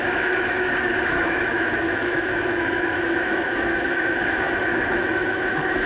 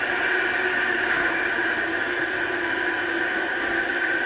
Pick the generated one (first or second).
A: first